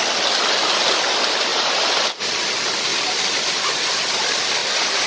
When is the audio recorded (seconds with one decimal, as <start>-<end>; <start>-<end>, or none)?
0.0-1.5; 2.1-2.9; 3.7-4.6